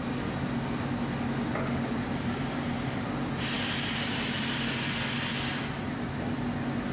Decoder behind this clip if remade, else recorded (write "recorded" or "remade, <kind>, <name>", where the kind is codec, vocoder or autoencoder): recorded